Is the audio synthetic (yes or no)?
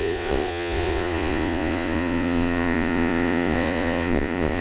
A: yes